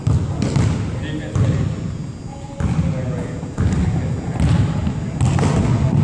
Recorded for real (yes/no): yes